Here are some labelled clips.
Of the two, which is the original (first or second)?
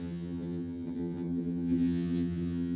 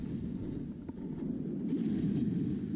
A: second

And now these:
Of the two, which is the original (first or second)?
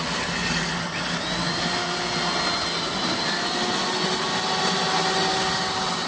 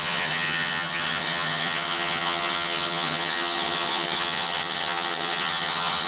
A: first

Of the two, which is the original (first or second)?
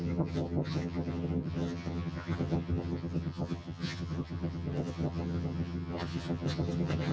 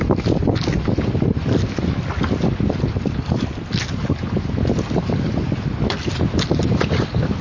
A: second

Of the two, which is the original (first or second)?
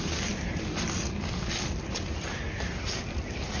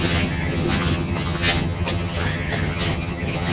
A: first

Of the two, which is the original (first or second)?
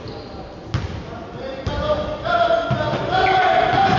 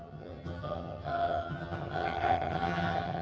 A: first